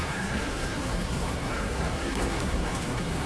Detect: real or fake fake